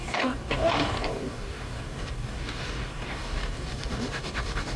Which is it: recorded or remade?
remade